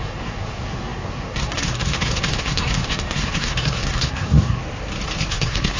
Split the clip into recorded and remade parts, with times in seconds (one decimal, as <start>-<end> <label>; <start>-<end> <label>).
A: 0.0-4.6 remade; 4.6-5.3 recorded; 5.3-5.8 remade